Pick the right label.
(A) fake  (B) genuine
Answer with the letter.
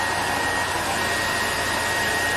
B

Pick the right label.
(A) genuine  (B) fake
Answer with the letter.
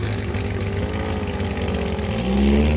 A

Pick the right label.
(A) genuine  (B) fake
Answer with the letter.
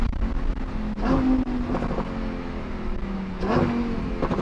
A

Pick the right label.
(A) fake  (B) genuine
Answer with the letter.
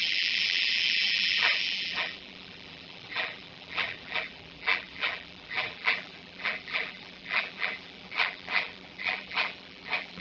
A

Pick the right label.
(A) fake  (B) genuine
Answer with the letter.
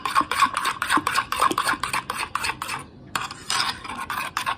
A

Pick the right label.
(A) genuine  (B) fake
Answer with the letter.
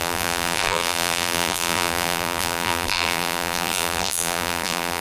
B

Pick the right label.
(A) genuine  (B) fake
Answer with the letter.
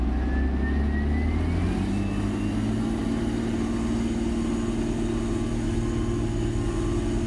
A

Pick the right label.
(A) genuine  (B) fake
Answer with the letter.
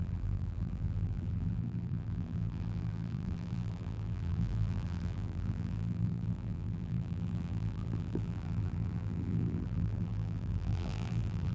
B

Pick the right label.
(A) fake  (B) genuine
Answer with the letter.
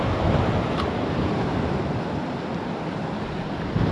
B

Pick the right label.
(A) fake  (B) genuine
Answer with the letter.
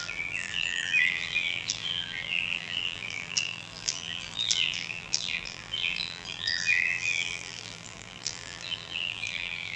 A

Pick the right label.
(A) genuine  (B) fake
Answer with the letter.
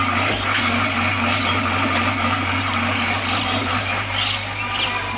A